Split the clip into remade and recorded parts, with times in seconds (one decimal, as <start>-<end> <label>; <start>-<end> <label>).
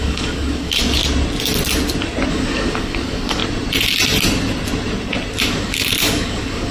0.0-1.0 remade; 1.0-2.3 recorded; 2.3-3.4 remade; 3.4-5.4 recorded; 5.4-6.7 remade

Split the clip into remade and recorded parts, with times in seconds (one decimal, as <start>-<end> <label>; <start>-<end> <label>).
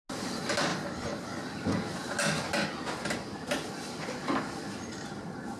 0.0-5.6 recorded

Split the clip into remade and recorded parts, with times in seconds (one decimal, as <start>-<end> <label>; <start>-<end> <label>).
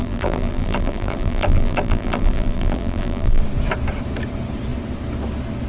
0.0-3.4 remade; 3.4-5.7 recorded